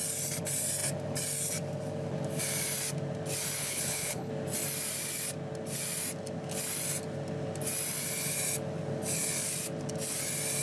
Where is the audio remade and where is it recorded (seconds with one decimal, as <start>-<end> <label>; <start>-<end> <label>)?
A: 0.0-3.6 recorded; 3.6-4.3 remade; 4.3-10.6 recorded